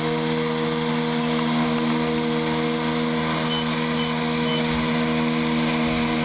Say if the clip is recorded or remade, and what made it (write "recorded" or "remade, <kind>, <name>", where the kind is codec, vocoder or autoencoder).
recorded